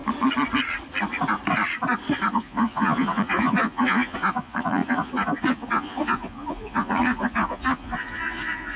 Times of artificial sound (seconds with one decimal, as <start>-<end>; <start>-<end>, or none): 2.3-8.8